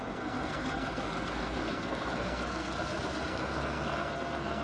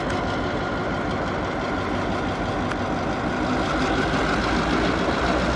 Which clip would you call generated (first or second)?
first